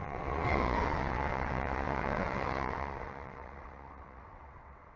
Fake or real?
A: fake